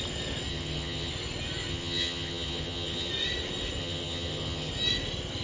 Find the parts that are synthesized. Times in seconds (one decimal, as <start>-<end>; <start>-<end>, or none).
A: 0.5-1.1; 1.7-3.1; 3.8-4.7